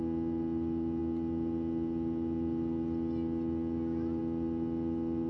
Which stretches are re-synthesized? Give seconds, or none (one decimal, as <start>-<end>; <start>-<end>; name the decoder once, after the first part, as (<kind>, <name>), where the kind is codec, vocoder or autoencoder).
none